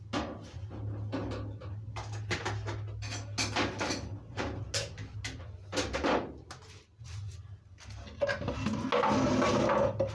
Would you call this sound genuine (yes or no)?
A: yes